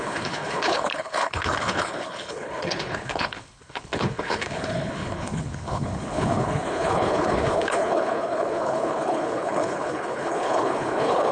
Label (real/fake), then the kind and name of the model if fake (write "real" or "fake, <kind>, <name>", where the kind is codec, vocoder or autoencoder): fake, codec, HILCodec